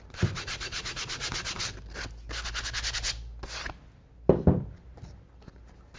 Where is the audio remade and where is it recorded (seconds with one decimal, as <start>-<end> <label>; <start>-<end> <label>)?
0.0-6.0 recorded